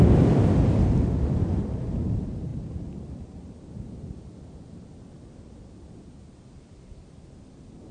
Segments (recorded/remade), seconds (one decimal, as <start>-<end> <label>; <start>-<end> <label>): 0.0-7.9 recorded